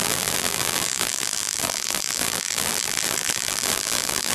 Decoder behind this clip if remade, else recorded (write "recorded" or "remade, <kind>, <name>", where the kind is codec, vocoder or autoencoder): remade, vocoder, BigVGAN v2